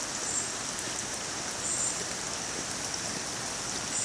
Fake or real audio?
real